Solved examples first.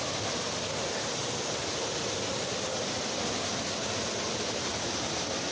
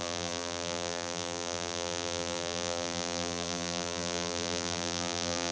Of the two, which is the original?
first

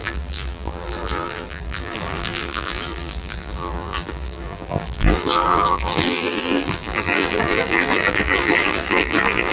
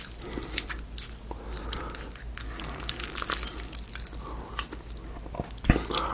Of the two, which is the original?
second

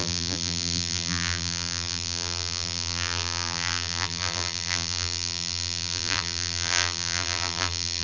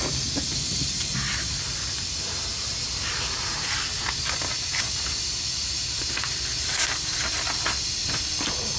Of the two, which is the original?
second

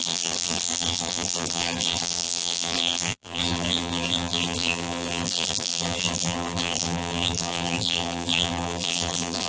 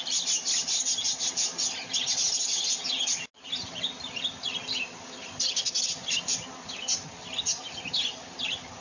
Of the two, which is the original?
second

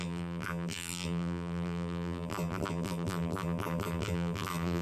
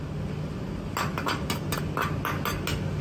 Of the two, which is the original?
second